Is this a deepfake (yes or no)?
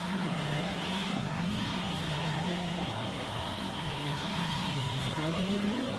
yes